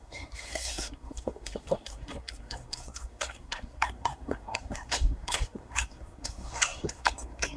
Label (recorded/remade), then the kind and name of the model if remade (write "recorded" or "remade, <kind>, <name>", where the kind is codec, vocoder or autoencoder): remade, codec, SNAC